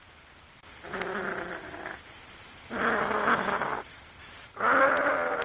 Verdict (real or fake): real